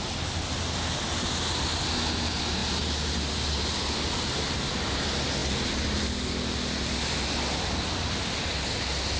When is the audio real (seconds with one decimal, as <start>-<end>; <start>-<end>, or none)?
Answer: 0.0-9.2

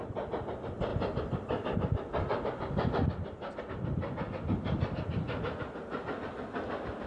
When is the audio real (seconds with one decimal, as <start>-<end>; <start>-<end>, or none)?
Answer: 0.0-7.1

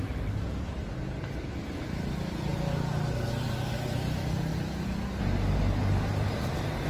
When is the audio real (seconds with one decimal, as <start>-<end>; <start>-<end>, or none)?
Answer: 0.0-6.9

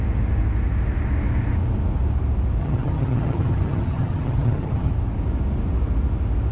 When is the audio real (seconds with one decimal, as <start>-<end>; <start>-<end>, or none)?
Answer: 0.0-2.6; 4.9-6.5

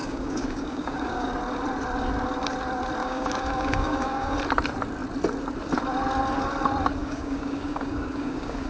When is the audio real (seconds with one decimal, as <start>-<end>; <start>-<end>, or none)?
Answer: 1.3-3.0; 4.4-7.0

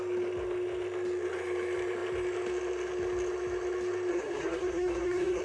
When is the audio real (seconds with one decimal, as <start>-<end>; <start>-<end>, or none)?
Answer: 0.0-4.1